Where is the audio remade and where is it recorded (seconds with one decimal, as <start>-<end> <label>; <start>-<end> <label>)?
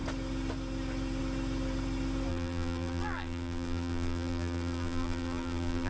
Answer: 0.0-2.3 recorded; 2.3-5.9 remade